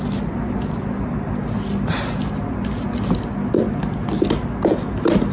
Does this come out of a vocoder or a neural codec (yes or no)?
no